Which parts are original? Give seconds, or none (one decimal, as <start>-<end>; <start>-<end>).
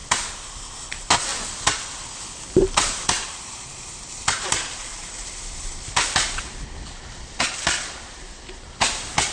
0.0-0.8